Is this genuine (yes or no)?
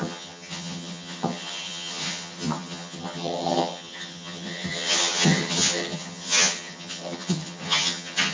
no